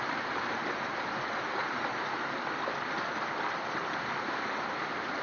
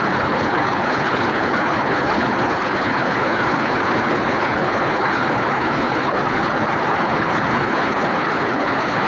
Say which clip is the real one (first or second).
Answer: first